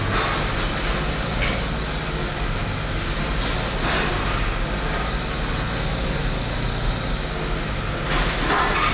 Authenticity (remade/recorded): recorded